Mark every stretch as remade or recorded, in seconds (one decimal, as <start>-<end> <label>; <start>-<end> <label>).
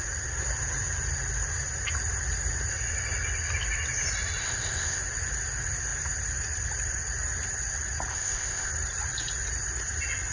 0.0-4.4 recorded; 4.4-5.0 remade; 5.0-8.1 recorded; 8.1-8.7 remade; 8.7-10.3 recorded